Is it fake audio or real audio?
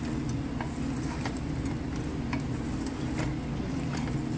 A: real